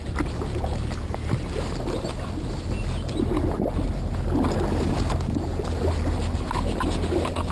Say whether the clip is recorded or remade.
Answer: recorded